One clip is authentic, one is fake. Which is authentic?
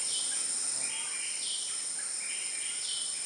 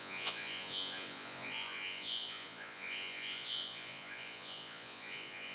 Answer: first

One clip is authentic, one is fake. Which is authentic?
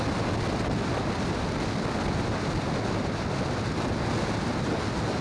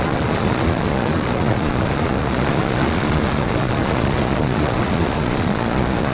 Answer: first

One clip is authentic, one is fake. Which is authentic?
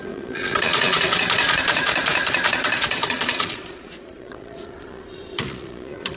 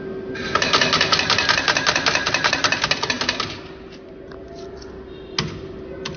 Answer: second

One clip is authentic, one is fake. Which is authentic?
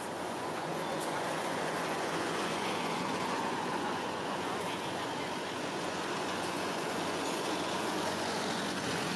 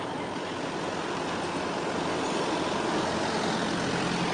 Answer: second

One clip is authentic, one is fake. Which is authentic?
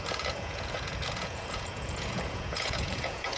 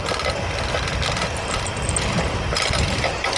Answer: second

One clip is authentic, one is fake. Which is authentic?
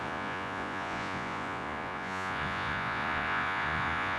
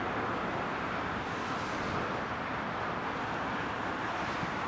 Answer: second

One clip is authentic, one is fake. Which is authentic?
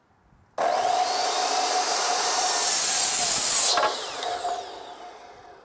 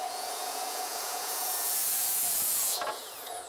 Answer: first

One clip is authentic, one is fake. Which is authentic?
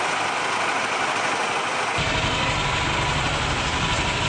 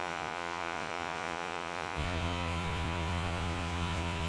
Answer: first